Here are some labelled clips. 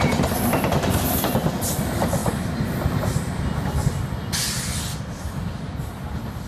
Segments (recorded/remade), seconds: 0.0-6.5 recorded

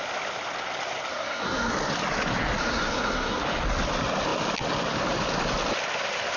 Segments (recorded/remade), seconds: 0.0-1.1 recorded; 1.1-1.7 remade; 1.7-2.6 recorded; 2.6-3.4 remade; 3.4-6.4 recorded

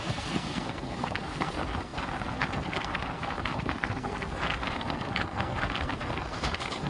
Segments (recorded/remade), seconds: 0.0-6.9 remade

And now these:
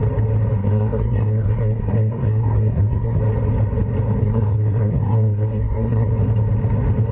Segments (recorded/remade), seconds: 0.0-0.6 recorded; 0.6-3.2 remade; 3.2-4.2 recorded; 4.2-6.1 remade; 6.1-7.1 recorded